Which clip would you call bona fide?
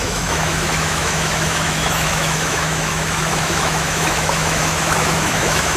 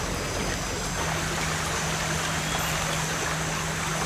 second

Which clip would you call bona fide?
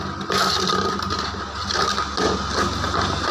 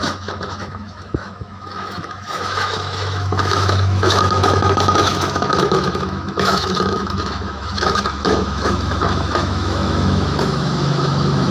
first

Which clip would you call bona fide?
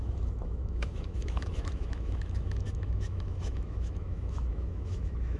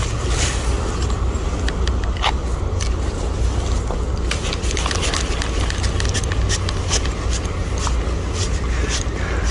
second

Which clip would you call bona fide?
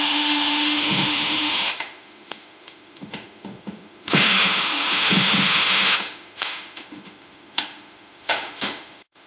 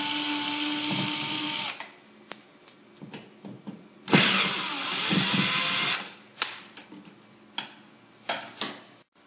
second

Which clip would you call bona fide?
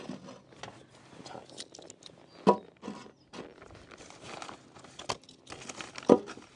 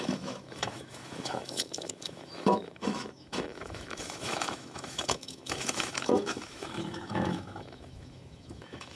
first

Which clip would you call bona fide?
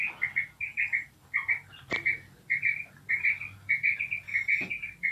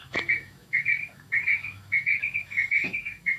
first